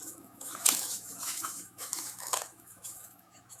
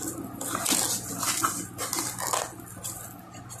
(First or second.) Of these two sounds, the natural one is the second